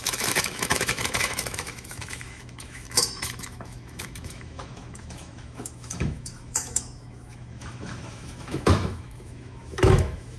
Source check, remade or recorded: remade